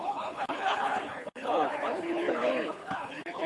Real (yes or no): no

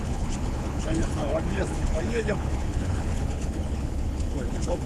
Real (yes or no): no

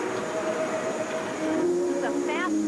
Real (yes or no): yes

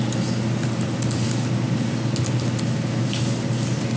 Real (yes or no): yes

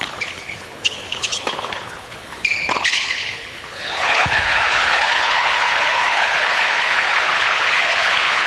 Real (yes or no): no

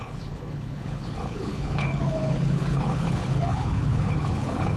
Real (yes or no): no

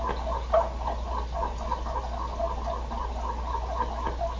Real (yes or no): yes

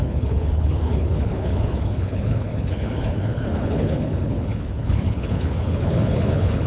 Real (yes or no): no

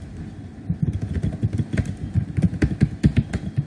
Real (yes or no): yes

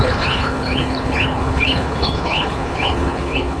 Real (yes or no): no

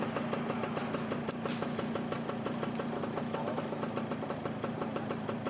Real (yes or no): yes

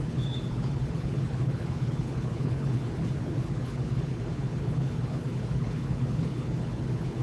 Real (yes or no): no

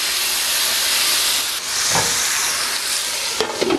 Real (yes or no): yes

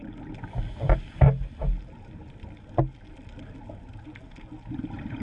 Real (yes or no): yes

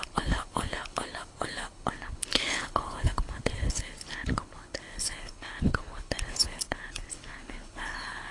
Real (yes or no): no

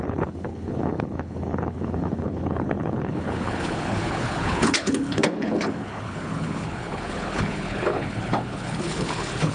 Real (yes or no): no